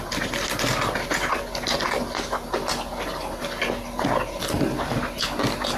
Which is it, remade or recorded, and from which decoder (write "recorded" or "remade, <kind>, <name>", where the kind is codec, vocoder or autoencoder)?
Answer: recorded